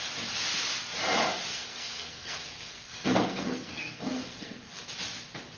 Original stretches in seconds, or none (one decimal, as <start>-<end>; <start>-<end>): 0.0-1.5; 4.9-5.6